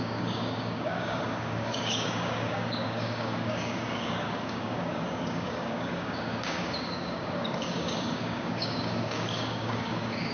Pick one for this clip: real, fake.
fake